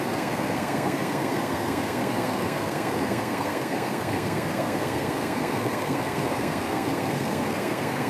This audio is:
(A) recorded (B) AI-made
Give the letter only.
B